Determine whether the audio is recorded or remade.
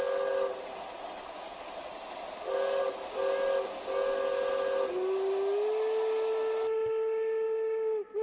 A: recorded